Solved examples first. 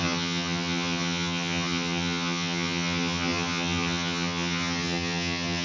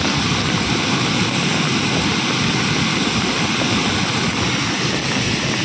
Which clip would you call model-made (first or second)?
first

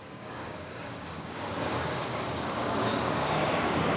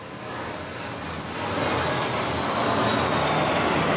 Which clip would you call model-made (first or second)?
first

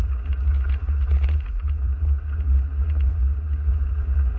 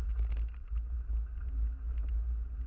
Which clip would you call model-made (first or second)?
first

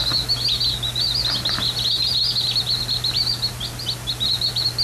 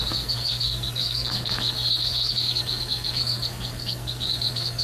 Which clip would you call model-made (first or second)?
second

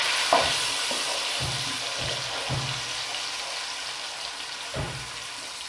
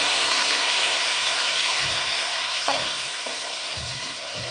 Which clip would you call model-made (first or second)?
second